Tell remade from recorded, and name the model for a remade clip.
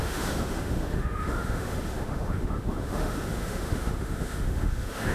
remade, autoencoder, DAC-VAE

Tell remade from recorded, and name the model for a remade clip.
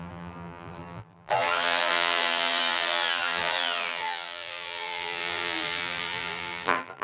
remade, vocoder, BigVGAN v2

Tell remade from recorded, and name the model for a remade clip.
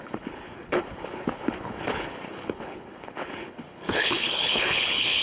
remade, codec, HILCodec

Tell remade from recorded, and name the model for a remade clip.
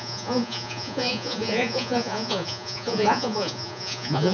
remade, vocoder, Vocos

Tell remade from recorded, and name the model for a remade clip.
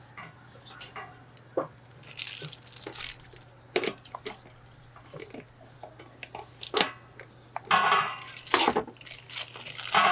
recorded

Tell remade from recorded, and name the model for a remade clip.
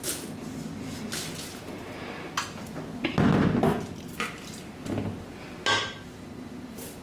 recorded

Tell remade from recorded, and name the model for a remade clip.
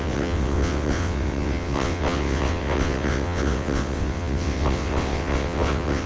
remade, vocoder, WaveNeXt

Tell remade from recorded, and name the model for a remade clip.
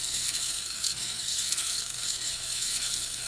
remade, codec, SNAC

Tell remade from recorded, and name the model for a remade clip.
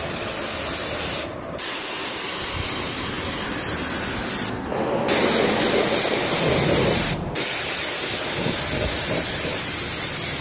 recorded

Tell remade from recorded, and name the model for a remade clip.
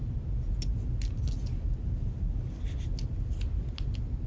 recorded